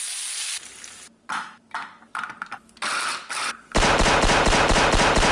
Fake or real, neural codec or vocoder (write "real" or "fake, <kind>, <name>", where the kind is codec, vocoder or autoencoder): real